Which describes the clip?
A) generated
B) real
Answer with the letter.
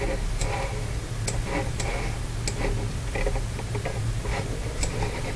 B